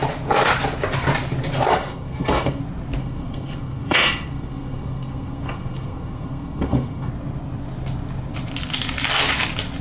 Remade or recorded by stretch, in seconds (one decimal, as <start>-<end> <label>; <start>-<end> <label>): 0.0-1.7 recorded; 1.7-2.6 remade; 2.6-3.0 recorded; 3.0-7.1 remade; 7.1-9.8 recorded